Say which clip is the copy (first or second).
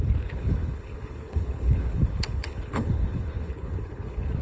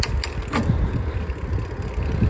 first